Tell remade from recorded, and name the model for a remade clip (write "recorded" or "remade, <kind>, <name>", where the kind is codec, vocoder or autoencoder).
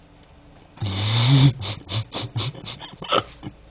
recorded